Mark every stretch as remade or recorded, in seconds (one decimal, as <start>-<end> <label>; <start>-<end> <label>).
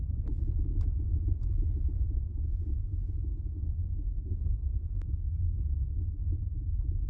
0.0-3.3 recorded; 3.3-6.4 remade; 6.4-7.1 recorded